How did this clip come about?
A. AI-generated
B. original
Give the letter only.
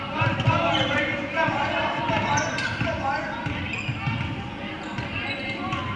B